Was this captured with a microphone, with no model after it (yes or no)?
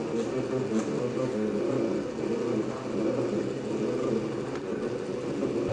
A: yes